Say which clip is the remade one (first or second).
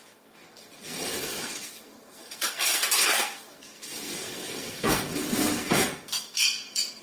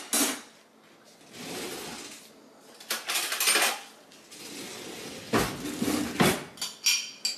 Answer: first